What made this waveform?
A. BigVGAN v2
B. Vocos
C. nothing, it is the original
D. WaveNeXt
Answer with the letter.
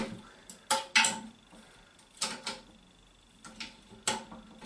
C